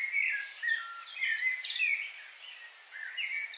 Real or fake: real